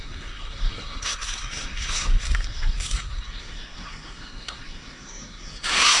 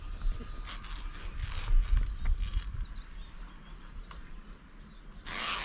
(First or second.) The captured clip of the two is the second